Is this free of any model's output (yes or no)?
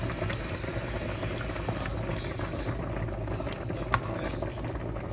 yes